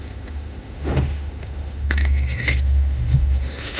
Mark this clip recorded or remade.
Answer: remade